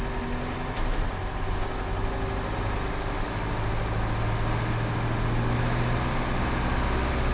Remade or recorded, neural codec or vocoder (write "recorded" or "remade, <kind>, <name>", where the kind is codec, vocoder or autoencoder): recorded